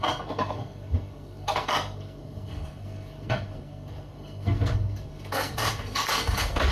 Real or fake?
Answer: fake